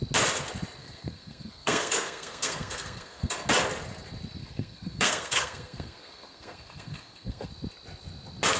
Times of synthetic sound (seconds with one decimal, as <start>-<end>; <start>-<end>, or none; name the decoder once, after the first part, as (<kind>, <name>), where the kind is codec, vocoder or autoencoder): 0.8-3.3 (codec, SNAC); 4.4-7.5